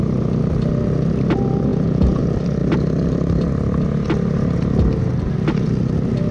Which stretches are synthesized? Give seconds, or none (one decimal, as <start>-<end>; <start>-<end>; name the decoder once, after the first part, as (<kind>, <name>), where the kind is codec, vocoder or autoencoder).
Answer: 1.7-2.2 (vocoder, Vocos)